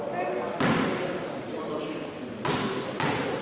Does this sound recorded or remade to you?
recorded